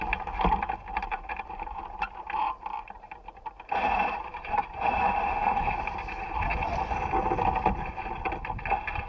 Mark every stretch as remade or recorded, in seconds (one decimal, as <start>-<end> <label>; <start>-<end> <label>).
0.0-6.5 remade; 6.5-9.1 recorded